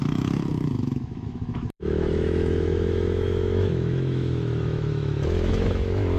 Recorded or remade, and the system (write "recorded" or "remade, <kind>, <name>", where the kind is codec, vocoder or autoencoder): remade, autoencoder, DAC-VAE